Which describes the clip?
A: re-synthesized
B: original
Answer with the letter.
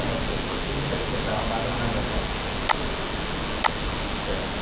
B